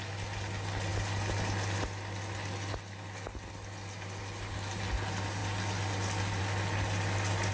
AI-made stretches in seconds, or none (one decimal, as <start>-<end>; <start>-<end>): none